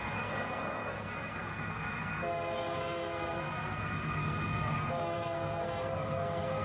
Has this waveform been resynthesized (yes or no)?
yes